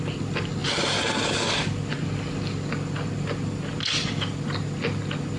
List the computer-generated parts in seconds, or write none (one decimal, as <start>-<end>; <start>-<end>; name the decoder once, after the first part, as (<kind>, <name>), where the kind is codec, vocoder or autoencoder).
none

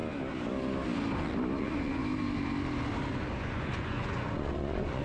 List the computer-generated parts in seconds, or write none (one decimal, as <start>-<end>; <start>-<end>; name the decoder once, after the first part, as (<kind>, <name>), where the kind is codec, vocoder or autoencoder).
1.6-2.0 (vocoder, Vocos); 3.4-5.0

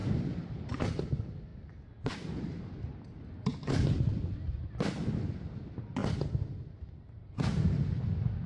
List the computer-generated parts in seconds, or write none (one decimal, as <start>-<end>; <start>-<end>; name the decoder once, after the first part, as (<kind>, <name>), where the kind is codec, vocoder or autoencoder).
none

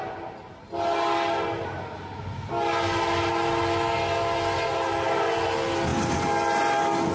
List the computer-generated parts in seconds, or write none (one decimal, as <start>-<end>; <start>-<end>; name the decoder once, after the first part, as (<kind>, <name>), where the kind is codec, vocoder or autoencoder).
none